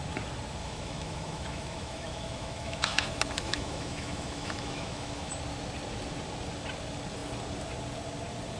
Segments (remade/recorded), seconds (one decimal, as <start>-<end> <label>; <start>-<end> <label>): 0.0-0.6 recorded; 0.6-5.3 remade; 5.3-8.6 recorded